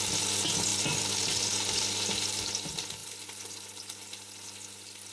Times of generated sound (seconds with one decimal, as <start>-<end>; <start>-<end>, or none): 0.7-2.5; 3.0-5.1